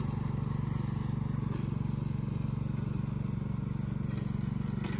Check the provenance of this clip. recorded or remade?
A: recorded